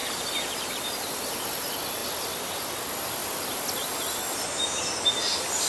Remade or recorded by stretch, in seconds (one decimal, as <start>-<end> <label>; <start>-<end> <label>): 0.0-1.6 remade; 1.6-2.0 recorded; 2.0-2.6 remade; 2.6-3.2 recorded; 3.2-4.3 remade; 4.3-5.7 recorded

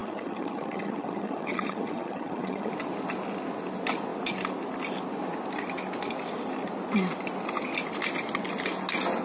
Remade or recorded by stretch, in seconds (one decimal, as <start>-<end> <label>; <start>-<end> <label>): 0.0-2.7 remade; 2.7-9.2 recorded

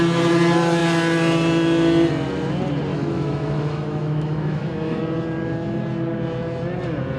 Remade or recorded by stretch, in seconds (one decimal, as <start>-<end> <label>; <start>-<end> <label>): 0.0-2.9 recorded; 2.9-5.0 remade; 5.0-7.2 recorded